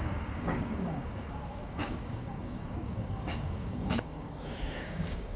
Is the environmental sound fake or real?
fake